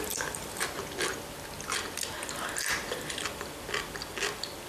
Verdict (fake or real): real